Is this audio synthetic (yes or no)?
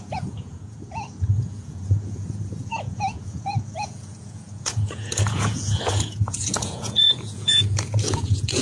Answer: yes